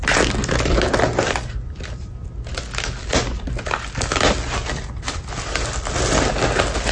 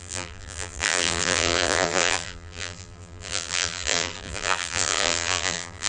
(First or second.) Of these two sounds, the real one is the first